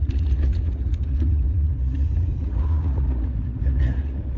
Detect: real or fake fake